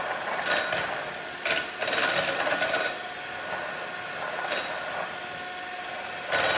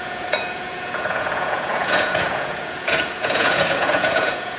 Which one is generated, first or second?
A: second